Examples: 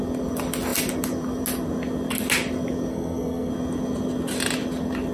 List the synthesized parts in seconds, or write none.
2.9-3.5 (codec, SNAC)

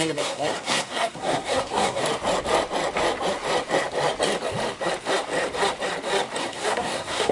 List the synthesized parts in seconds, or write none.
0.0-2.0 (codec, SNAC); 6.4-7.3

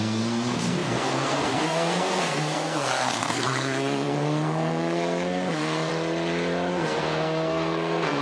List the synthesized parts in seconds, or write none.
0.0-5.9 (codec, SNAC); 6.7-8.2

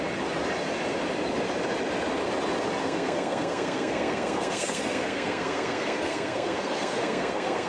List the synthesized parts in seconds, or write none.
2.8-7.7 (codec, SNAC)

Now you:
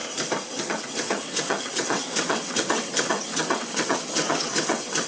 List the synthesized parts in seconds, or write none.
0.6-5.1 (vocoder, WaveNeXt)